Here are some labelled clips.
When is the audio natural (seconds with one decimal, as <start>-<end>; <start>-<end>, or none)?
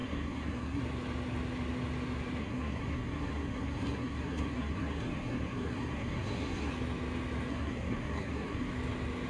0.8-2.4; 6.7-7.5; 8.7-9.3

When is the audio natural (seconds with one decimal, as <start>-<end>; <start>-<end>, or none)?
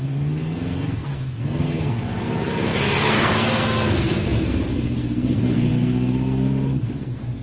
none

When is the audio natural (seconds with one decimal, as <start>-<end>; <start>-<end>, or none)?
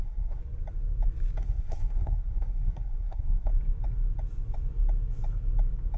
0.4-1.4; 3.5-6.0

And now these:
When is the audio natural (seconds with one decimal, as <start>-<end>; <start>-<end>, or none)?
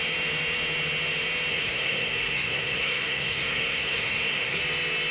0.0-1.5; 4.6-5.1